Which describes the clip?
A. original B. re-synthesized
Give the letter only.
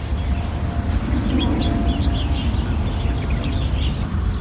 A